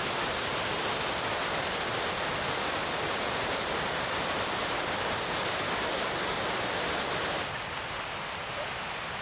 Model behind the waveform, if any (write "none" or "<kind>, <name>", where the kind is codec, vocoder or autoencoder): none